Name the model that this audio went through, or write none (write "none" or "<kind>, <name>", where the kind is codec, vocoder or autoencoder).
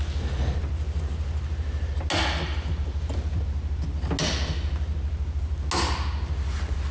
none